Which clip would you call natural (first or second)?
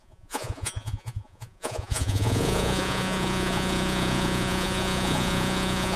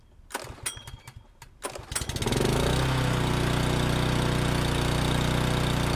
second